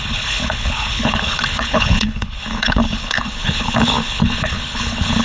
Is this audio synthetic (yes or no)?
yes